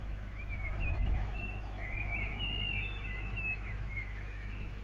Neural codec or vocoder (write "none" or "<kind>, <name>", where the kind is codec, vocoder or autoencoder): autoencoder, DAC-VAE